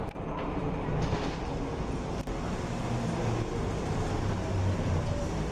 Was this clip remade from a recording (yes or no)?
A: no